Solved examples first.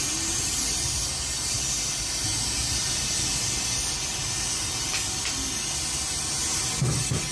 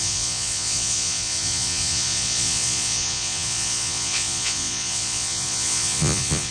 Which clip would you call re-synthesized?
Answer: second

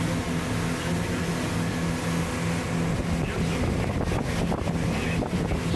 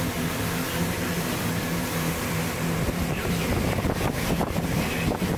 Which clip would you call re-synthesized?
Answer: second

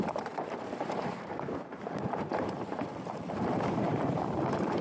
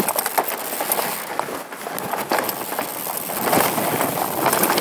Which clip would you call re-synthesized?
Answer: first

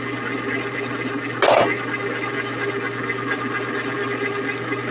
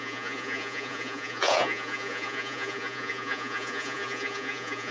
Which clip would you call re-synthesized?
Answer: second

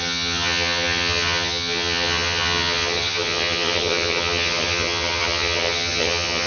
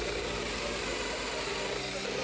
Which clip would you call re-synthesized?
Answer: first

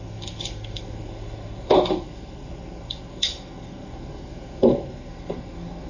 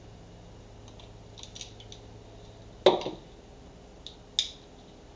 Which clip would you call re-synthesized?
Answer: first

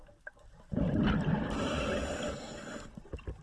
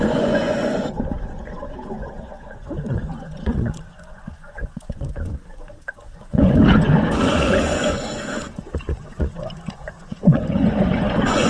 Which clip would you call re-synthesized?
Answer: second